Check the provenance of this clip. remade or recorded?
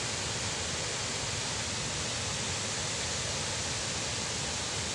recorded